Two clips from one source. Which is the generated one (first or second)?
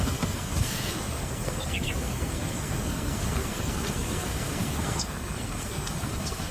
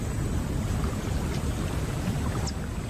first